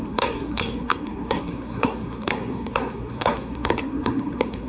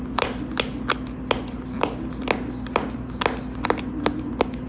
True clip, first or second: second